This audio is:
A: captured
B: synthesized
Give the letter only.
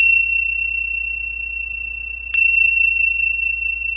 A